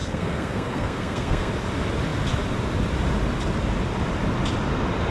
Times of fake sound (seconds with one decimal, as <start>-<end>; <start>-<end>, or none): 0.0-1.5